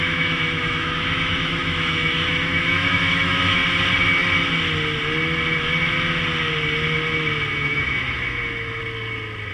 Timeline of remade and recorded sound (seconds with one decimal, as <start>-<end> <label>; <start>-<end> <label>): 0.0-3.6 remade; 3.6-7.5 recorded; 7.5-8.8 remade; 8.8-9.5 recorded